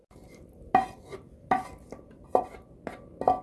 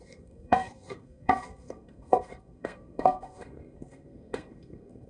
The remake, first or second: second